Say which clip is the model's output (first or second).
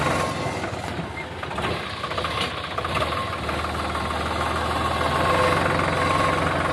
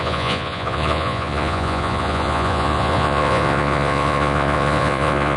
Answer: second